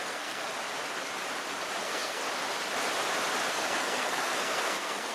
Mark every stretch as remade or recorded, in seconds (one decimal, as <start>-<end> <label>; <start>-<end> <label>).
0.0-0.5 remade; 0.5-1.8 recorded; 1.8-2.2 remade; 2.2-3.5 recorded; 3.5-5.1 remade